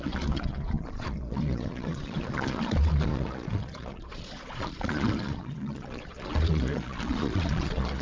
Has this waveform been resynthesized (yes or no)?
yes